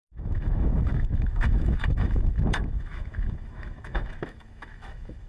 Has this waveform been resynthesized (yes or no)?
yes